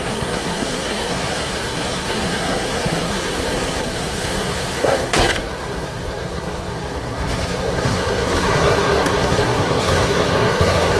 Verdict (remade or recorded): remade